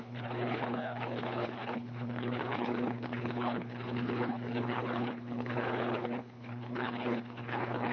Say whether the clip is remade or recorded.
remade